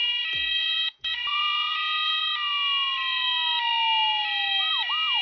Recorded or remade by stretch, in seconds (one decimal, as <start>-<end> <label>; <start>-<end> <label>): 0.0-0.6 recorded; 0.6-2.2 remade; 2.2-5.2 recorded